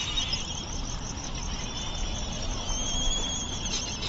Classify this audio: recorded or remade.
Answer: recorded